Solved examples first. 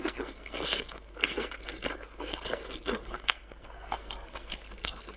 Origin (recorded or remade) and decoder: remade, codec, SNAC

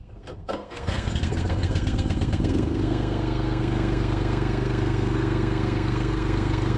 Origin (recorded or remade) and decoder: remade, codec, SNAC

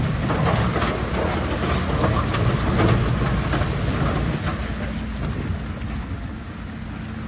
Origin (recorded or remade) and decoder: recorded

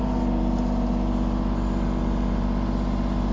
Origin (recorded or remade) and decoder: recorded